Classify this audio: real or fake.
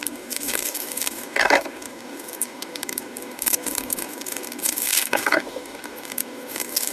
fake